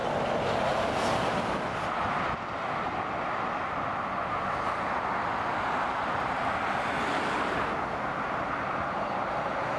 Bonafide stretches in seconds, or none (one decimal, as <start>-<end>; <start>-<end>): 0.0-9.8